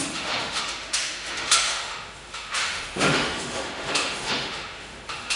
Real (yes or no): no